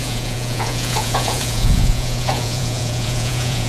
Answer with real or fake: fake